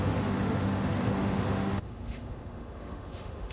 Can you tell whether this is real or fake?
fake